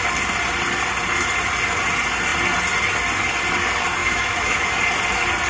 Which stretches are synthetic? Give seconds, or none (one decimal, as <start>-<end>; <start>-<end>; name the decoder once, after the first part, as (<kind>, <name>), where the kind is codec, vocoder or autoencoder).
4.0-4.8 (autoencoder, DAC-VAE)